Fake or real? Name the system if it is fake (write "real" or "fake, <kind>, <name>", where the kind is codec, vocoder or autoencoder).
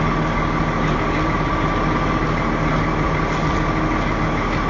real